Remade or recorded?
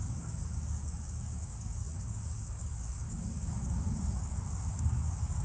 remade